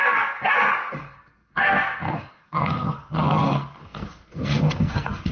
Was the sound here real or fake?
fake